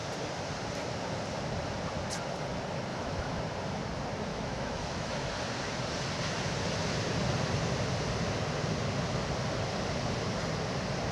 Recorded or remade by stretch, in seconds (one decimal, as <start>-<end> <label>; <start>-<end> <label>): 0.0-2.9 recorded; 2.9-3.4 remade; 3.4-4.3 recorded; 4.3-5.3 remade; 5.3-11.1 recorded